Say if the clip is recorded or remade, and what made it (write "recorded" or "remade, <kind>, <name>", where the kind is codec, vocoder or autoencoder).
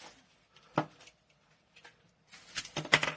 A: recorded